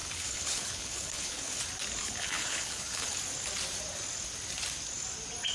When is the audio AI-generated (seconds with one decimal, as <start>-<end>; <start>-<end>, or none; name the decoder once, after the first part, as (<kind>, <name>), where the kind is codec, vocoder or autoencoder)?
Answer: 0.0-1.6 (codec, HILCodec); 2.0-3.2